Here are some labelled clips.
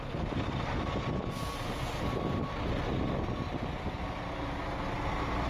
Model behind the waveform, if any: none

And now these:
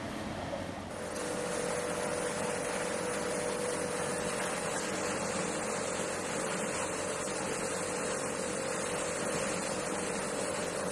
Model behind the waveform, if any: none